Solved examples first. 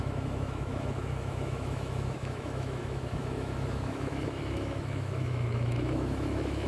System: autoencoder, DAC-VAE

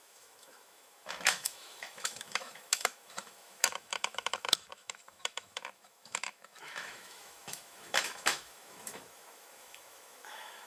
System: autoencoder, DAC-VAE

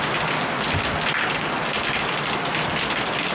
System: none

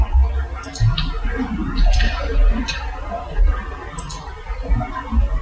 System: none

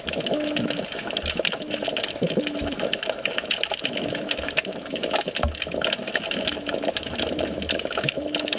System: autoencoder, DAC-VAE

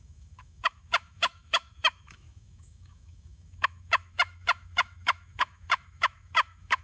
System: autoencoder, DAC-VAE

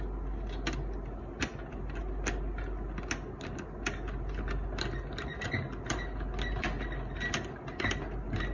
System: none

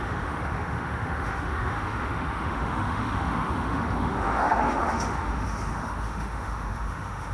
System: autoencoder, DAC-VAE